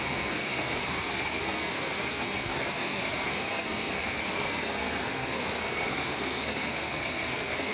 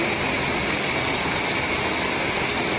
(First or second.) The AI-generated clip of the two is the first